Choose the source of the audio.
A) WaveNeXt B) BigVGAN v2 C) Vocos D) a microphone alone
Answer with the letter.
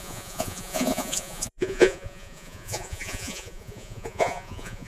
C